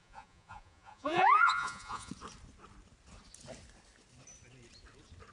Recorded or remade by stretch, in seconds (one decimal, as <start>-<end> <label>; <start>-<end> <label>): 0.0-2.1 remade; 2.1-5.3 recorded